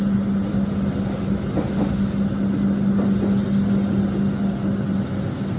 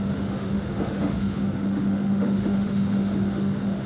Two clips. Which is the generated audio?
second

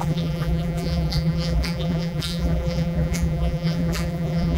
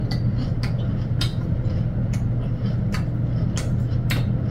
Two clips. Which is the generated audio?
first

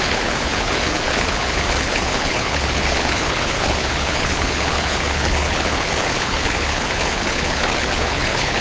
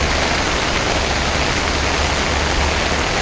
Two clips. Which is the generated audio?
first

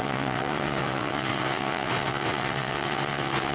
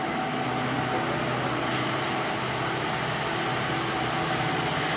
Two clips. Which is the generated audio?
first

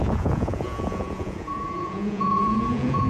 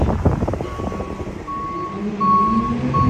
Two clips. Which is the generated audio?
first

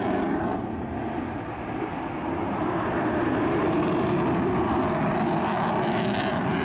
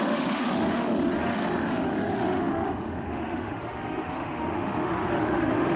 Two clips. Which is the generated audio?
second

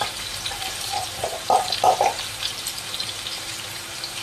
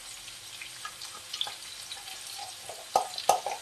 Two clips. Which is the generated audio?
first